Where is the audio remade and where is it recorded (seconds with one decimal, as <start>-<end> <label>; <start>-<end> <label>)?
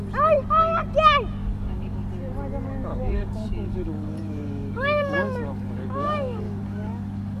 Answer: 0.0-1.4 recorded; 1.4-2.0 remade; 2.0-2.9 recorded; 2.9-7.4 remade